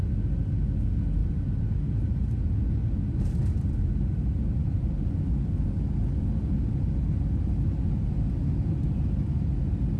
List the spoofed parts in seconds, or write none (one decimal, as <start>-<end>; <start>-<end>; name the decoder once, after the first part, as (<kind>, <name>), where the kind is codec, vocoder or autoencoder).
1.2-5.0 (vocoder, BigVGAN v2)